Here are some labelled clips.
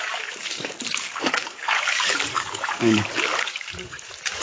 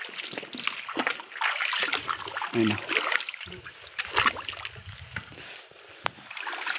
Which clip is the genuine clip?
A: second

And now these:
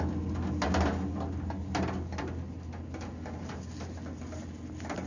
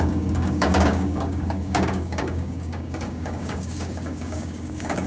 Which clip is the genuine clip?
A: first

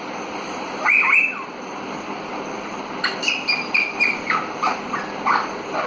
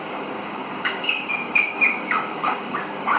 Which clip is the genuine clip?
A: first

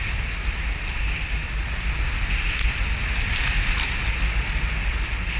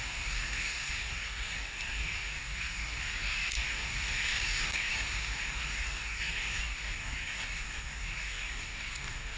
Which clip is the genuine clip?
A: first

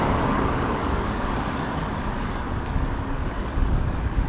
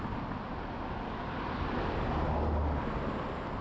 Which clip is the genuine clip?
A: second